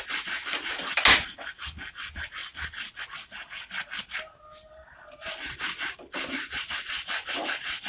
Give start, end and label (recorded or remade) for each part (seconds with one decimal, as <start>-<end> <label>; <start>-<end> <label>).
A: 0.0-7.9 recorded